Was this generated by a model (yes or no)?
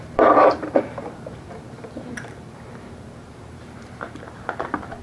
yes